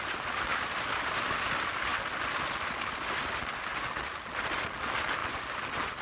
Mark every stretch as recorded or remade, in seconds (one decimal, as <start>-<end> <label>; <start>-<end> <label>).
0.0-6.0 recorded